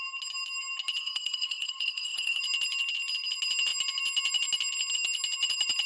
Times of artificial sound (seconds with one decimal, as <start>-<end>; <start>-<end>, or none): 1.0-2.4